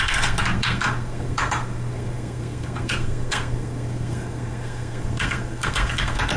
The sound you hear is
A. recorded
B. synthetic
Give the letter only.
B